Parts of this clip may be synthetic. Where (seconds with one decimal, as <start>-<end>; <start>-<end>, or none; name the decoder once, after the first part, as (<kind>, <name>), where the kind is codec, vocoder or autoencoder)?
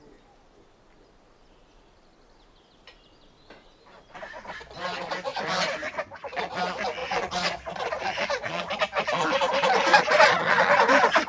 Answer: 7.0-8.6 (vocoder, Vocos); 9.9-10.7